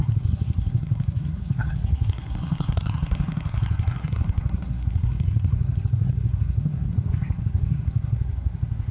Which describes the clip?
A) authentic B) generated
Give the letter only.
B